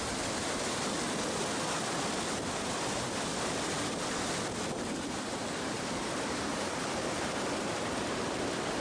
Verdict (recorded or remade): recorded